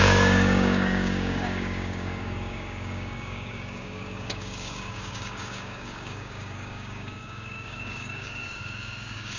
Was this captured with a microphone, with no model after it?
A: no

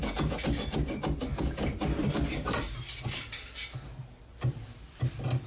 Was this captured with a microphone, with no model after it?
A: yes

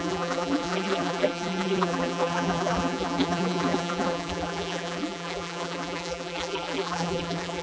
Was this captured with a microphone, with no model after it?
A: no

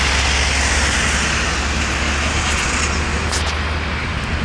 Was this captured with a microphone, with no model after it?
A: yes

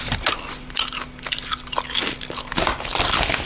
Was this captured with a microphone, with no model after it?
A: yes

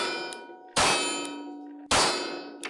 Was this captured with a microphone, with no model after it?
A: yes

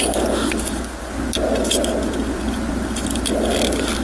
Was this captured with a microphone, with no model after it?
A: yes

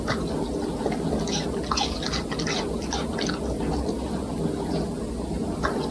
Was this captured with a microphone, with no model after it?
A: yes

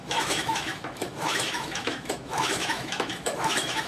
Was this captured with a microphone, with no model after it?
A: no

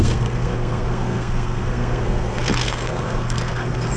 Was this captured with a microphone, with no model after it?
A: no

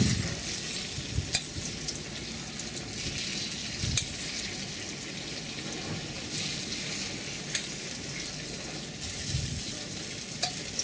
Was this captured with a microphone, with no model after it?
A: yes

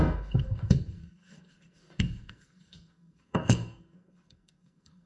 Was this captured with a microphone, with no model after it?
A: no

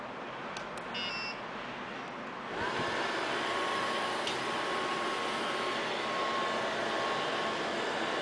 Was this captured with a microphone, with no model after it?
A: yes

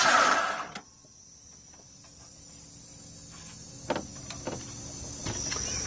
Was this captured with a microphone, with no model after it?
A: yes